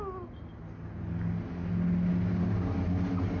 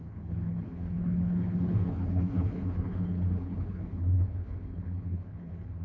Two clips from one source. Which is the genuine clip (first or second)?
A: first